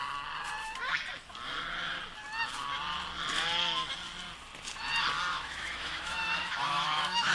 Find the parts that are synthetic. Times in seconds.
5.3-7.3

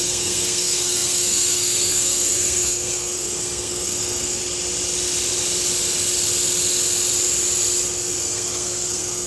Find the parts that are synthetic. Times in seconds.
0.0-4.4; 8.2-9.3

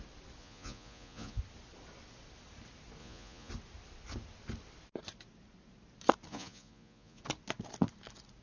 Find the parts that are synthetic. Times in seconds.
0.4-1.4; 3.0-3.5; 6.3-7.2

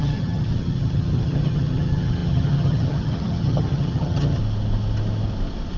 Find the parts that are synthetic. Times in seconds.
0.0-4.4

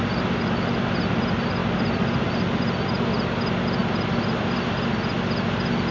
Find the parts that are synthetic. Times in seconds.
3.8-4.8

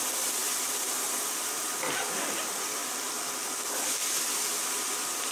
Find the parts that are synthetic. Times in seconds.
4.0-5.3